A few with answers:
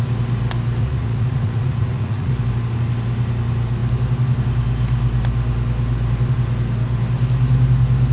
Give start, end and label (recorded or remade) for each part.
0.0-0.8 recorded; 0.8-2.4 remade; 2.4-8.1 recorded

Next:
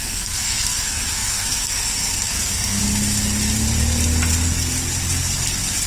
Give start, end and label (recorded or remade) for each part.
0.0-2.8 remade; 2.8-5.9 recorded

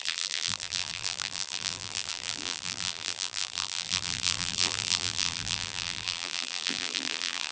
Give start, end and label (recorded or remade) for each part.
0.0-7.5 remade

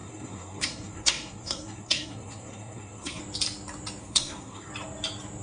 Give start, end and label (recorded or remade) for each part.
0.0-3.2 remade; 3.2-4.0 recorded; 4.0-4.7 remade; 4.7-5.4 recorded